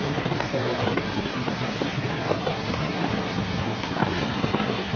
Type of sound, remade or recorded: remade